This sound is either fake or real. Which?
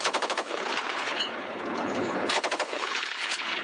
fake